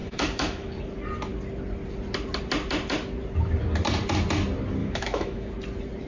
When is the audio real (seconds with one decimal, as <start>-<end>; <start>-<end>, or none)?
0.7-4.8; 5.5-6.1